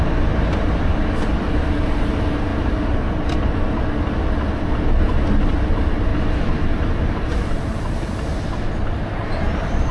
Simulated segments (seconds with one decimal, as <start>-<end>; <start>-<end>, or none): 2.5-4.0; 6.1-9.9